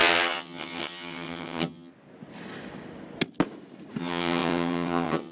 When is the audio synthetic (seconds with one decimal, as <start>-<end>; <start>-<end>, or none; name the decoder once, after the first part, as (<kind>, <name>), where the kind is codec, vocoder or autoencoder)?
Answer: 0.0-1.9 (vocoder, HiFi-GAN); 4.0-5.3